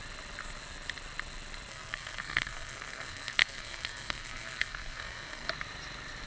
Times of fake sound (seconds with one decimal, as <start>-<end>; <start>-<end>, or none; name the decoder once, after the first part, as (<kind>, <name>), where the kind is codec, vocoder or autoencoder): 1.7-5.5 (codec, SNAC)